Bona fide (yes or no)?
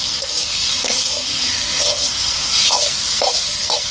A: no